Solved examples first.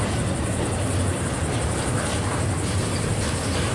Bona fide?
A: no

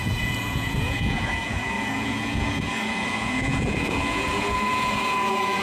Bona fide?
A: no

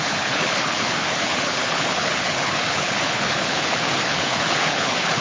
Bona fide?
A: no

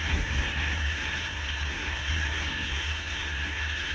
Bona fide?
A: no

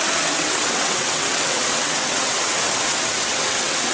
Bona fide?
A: no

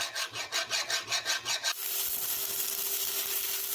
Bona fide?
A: yes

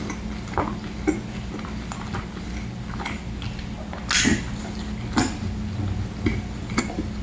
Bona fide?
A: yes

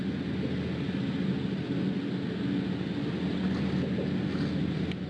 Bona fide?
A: yes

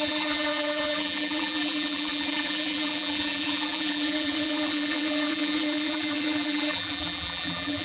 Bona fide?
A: no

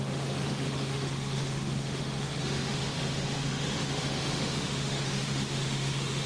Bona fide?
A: no